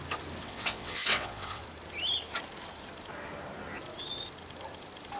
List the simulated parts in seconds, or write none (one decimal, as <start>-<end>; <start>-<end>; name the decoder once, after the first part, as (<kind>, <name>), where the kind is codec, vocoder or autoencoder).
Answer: 0.4-1.6 (vocoder, WaveNeXt)

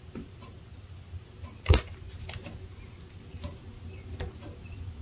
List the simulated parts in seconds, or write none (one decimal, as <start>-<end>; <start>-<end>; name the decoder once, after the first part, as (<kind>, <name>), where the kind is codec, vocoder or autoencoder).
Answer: none

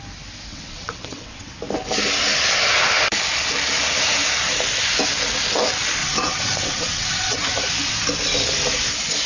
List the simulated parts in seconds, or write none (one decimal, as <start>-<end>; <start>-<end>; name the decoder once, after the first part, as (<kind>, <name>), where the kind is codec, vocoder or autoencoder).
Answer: 0.5-1.5 (vocoder, WaveNeXt); 6.0-7.5